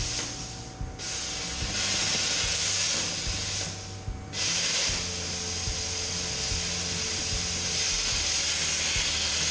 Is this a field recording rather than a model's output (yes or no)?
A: yes